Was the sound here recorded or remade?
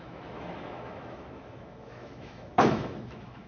remade